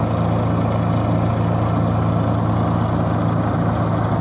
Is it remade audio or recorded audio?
recorded